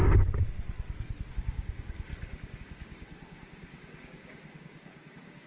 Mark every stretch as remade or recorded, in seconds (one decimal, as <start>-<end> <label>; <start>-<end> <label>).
0.0-1.3 recorded; 1.3-2.1 remade; 2.1-2.6 recorded; 2.6-5.5 remade